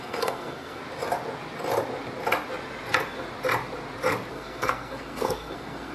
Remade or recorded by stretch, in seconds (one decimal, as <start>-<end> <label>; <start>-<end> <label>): 0.0-0.8 remade; 0.8-4.3 recorded; 4.3-5.9 remade